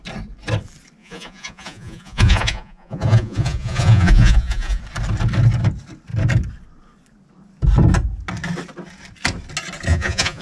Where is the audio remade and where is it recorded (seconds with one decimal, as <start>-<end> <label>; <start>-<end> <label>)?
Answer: 0.0-1.0 recorded; 1.0-4.8 remade; 4.8-9.9 recorded; 9.9-10.4 remade